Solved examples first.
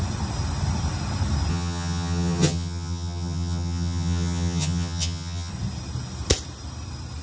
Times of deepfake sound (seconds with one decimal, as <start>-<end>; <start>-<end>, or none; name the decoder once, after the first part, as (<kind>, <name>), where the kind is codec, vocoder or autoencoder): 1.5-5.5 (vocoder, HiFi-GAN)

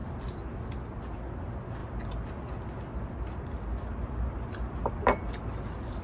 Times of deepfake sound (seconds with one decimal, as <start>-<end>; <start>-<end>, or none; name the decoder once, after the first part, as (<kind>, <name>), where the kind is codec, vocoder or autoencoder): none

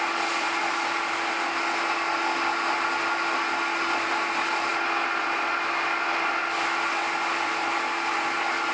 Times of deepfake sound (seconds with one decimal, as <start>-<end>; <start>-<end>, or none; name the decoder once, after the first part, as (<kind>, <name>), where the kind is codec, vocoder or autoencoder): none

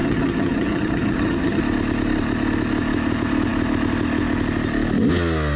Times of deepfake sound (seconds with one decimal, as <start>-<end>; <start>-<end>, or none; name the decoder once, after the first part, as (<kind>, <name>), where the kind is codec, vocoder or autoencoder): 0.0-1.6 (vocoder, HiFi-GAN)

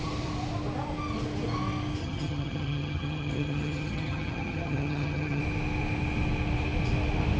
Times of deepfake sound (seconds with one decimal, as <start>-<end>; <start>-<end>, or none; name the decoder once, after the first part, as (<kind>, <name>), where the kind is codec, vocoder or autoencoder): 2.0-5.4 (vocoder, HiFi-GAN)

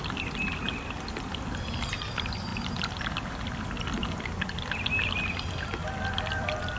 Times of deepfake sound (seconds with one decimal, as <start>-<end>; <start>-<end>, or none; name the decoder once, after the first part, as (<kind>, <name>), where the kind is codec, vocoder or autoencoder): none

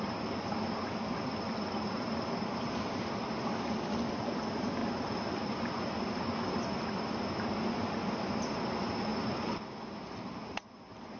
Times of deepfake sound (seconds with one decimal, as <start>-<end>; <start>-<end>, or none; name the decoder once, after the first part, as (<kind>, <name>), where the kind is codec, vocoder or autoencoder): none